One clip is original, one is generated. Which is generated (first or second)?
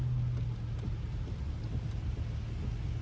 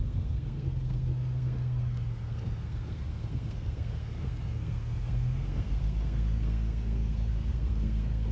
second